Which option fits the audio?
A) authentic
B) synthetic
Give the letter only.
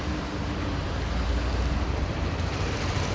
A